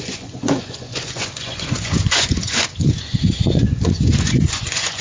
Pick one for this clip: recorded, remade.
remade